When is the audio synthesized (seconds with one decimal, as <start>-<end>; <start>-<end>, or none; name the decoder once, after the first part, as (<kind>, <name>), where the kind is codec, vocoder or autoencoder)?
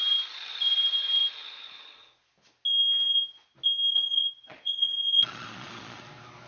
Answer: 3.9-6.0 (vocoder, Vocos)